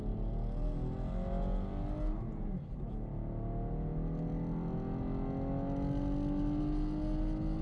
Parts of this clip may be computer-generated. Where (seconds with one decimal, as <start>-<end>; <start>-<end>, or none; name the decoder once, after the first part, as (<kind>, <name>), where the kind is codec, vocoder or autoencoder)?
none